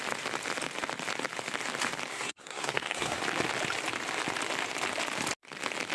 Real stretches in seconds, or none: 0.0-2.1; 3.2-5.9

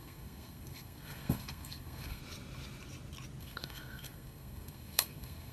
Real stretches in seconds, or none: 2.2-3.4

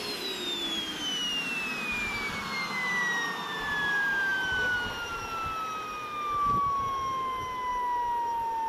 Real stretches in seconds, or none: 0.0-8.7

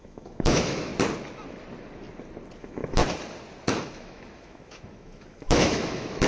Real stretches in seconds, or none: 0.9-2.6; 3.0-3.7

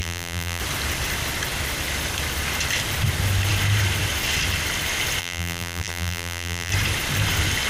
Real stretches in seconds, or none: 0.6-5.2; 6.7-7.7